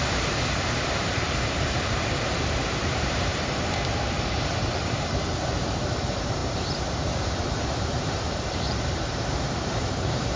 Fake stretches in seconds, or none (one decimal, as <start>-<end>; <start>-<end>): 0.0-10.4